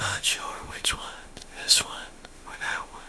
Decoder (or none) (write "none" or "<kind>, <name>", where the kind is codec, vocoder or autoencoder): autoencoder, DAC-VAE